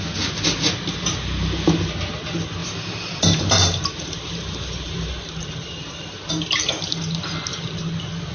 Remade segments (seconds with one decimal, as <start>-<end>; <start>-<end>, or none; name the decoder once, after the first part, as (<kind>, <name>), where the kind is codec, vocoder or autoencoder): 2.6-6.7 (vocoder, BigVGAN v2)